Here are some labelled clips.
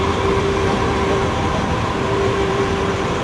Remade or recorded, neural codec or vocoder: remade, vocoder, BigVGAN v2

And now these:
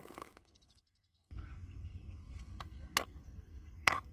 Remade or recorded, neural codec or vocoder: remade, codec, SNAC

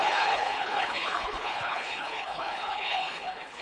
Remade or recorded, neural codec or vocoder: remade, codec, HILCodec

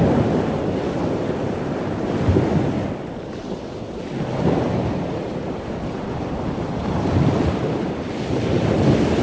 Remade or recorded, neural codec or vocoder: recorded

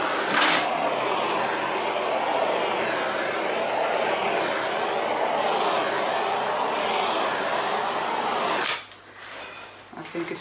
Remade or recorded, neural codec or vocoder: recorded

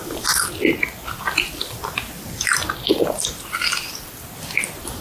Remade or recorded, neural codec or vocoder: recorded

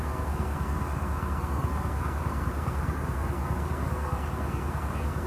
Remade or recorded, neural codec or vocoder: remade, codec, SNAC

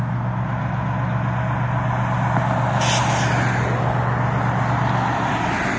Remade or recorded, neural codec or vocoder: recorded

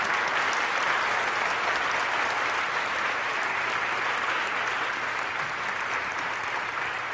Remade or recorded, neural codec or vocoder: recorded